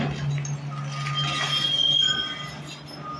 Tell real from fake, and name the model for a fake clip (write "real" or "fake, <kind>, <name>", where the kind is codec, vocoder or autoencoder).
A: real